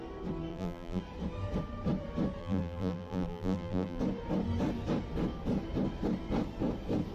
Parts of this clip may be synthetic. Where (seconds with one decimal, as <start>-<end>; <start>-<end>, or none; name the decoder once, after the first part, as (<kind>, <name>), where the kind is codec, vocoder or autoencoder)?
0.5-1.0 (vocoder, BigVGAN v2); 2.4-4.0